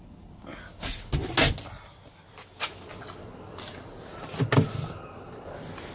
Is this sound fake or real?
real